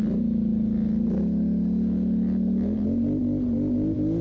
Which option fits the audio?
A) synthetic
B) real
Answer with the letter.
B